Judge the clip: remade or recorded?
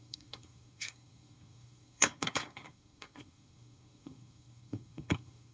remade